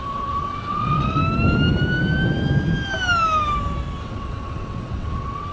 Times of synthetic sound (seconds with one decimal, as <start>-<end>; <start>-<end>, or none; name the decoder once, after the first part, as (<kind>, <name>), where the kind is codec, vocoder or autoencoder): 0.0-1.2 (vocoder, WaveNeXt); 4.0-5.5